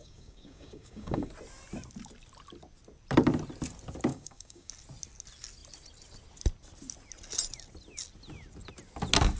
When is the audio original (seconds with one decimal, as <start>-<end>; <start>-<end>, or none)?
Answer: 1.3-4.1; 4.7-9.4